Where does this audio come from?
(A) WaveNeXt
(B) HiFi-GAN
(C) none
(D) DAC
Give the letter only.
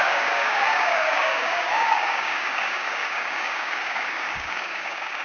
D